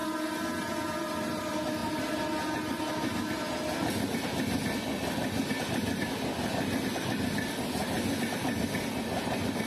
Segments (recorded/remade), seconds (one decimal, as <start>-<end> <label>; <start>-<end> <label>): 0.0-9.7 recorded